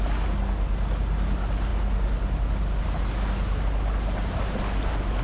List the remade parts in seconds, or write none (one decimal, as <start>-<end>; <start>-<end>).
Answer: none